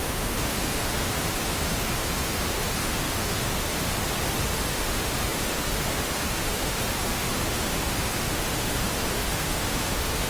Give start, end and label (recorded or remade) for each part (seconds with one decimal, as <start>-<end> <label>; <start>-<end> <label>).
0.0-3.9 remade; 3.9-4.5 recorded; 4.5-10.3 remade

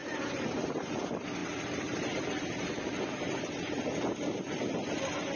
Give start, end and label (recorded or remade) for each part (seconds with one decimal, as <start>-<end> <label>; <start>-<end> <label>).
0.0-0.9 remade; 0.9-1.4 recorded; 1.4-4.6 remade; 4.6-5.4 recorded

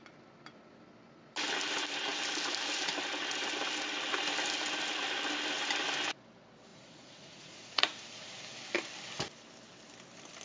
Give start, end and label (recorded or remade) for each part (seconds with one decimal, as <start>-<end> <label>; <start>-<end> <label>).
0.0-6.7 recorded; 6.7-8.4 remade; 8.4-10.4 recorded

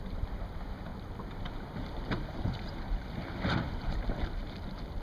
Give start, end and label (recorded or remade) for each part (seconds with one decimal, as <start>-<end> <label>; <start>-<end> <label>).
0.0-0.9 recorded; 0.9-3.9 remade; 3.9-5.0 recorded

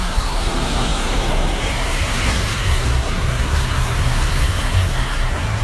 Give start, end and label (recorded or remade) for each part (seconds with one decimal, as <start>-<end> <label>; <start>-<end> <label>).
0.0-5.6 remade

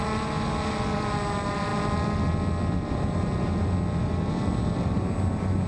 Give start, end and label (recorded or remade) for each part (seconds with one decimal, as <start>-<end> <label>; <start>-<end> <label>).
0.0-5.7 recorded

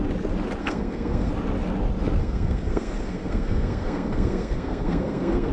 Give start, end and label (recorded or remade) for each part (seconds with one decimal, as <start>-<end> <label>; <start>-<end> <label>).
0.0-0.6 recorded; 0.6-1.3 remade; 1.3-2.2 recorded; 2.2-5.5 remade

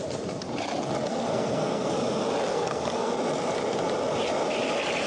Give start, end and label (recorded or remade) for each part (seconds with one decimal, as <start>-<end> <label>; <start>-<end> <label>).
0.0-1.1 recorded; 1.1-1.9 remade; 1.9-2.5 recorded; 2.5-3.1 remade; 3.1-5.1 recorded